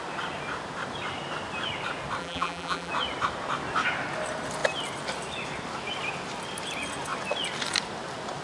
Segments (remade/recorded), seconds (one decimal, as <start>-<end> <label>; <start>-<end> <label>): 0.0-2.2 recorded; 2.2-2.9 remade; 2.9-8.4 recorded